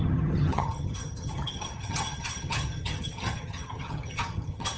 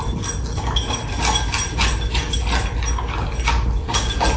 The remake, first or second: first